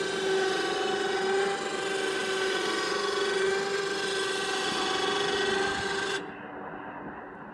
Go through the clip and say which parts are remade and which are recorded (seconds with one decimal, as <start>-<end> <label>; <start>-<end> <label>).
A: 0.0-7.5 recorded